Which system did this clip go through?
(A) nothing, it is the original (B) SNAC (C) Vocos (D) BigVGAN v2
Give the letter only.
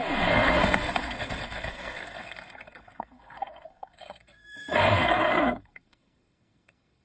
B